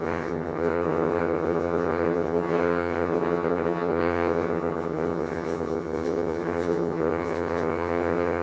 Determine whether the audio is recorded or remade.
remade